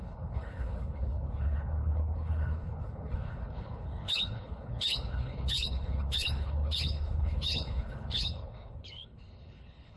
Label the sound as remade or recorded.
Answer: remade